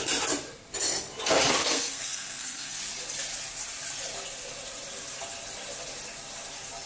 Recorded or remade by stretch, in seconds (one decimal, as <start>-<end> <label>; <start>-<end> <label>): 0.0-1.6 recorded; 1.6-2.8 remade; 2.8-6.9 recorded